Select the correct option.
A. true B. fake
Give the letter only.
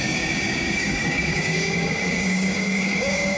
B